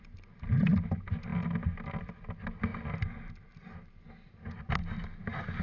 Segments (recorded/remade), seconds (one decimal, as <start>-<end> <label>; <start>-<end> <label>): 0.0-5.6 recorded